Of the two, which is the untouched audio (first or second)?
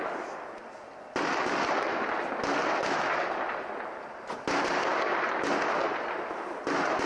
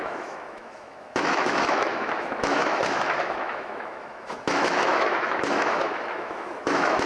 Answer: first